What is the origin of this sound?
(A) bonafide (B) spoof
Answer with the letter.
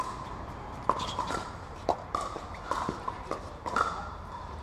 B